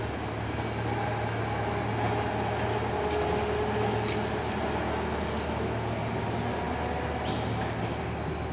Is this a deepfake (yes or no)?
no